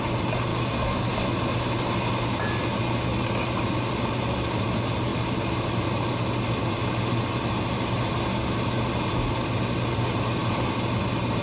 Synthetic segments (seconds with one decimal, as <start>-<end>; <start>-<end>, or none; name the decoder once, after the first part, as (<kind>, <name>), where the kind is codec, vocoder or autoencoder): 0.5-1.1 (autoencoder, DAC-VAE)